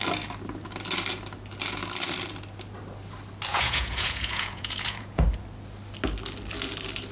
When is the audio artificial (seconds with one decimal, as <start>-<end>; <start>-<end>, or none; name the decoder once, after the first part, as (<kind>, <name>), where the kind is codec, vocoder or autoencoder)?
3.5-5.2 (vocoder, Vocos)